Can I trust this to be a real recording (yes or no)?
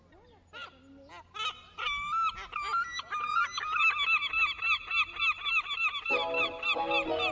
yes